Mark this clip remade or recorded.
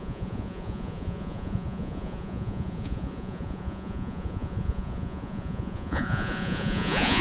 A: remade